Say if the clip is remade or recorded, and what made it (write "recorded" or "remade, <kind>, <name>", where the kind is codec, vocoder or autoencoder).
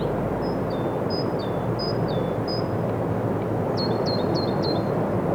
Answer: recorded